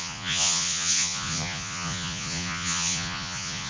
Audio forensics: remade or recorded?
remade